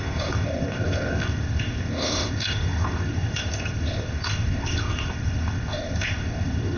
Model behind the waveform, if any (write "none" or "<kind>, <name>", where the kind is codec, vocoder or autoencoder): codec, ZipCodec